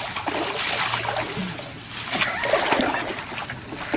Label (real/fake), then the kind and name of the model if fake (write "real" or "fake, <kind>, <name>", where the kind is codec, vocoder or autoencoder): real